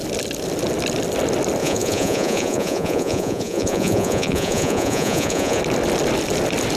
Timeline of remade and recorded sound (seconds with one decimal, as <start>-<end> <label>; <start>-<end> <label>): 0.0-1.6 recorded; 1.6-5.6 remade; 5.6-6.8 recorded